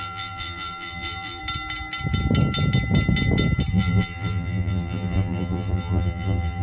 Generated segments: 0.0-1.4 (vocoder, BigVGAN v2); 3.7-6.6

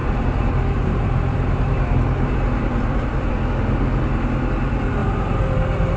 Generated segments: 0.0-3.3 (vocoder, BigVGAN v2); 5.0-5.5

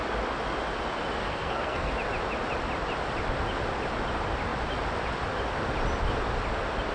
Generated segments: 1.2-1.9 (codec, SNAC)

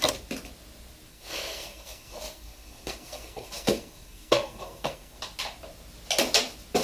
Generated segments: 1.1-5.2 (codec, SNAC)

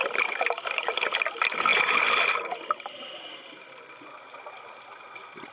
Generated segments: none

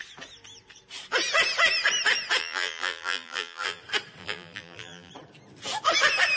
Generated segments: 2.4-3.8 (vocoder, BigVGAN v2); 4.2-5.1